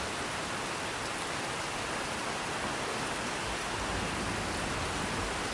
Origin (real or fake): real